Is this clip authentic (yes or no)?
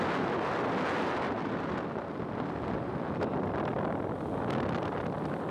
yes